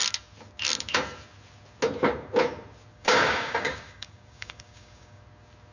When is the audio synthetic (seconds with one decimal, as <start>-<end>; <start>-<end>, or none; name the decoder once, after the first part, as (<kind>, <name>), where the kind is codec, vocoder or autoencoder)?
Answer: 2.9-5.2 (codec, DAC)